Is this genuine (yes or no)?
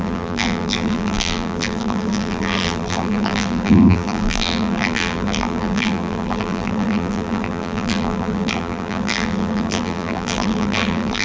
no